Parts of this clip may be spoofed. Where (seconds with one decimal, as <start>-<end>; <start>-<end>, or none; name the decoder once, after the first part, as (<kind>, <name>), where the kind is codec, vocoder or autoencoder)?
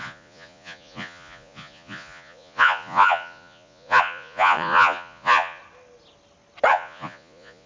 0.0-5.6 (vocoder, Vocos); 6.7-7.7